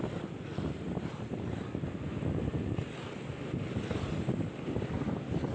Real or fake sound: real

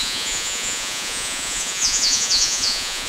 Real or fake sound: fake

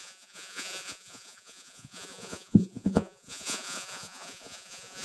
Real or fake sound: fake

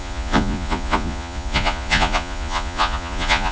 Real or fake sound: fake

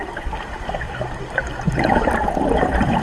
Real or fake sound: real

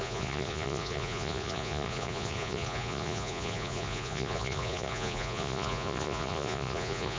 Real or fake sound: fake